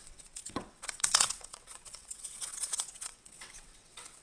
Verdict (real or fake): fake